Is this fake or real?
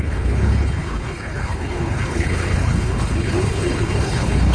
fake